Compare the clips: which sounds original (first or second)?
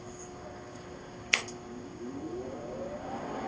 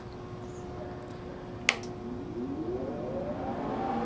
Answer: second